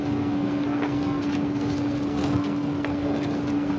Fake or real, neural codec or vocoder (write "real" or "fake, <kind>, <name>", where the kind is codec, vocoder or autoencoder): fake, codec, SNAC